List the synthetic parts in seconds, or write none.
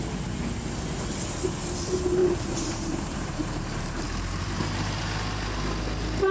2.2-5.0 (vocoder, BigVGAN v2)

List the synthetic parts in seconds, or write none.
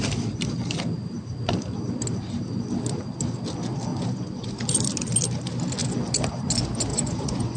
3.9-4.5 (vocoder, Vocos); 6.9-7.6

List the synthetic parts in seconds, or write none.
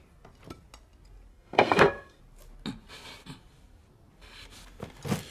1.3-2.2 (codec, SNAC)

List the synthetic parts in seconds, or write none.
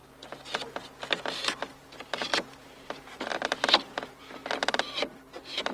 1.7-5.7 (vocoder, BigVGAN v2)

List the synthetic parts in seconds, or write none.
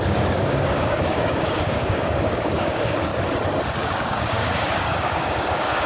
0.0-3.1 (codec, DAC); 3.7-5.9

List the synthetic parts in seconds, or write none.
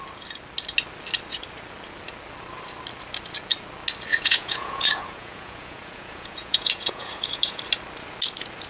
4.1-7.6 (vocoder, Vocos)